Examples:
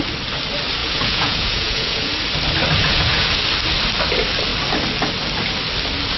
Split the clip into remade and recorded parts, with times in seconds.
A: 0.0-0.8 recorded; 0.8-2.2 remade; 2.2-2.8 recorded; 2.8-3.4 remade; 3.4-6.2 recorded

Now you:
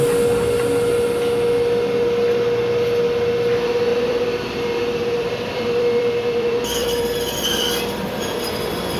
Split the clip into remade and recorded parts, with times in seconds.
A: 0.0-3.9 recorded; 3.9-9.0 remade

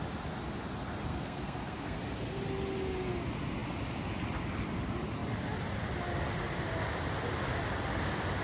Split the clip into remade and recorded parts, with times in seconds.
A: 0.0-1.1 recorded; 1.1-2.0 remade; 2.0-8.4 recorded